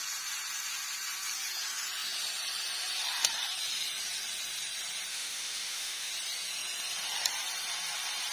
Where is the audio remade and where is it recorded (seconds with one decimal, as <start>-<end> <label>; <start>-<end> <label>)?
0.0-5.1 recorded; 5.1-6.1 remade; 6.1-8.3 recorded